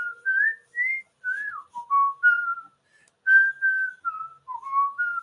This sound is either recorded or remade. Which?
recorded